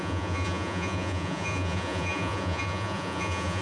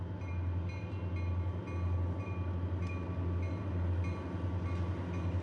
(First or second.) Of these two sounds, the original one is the second